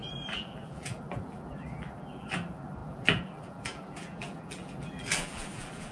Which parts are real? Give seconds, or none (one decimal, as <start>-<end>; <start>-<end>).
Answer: none